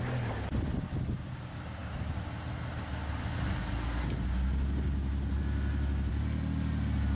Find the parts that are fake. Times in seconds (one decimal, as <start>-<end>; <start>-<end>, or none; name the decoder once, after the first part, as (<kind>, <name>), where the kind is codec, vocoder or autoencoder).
none